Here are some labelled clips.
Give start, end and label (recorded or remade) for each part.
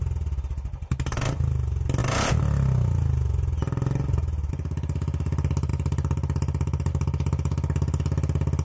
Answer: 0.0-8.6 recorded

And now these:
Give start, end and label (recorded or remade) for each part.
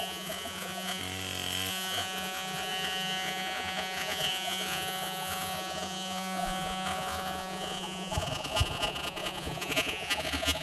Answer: 0.0-1.0 remade; 1.0-1.7 recorded; 1.7-10.6 remade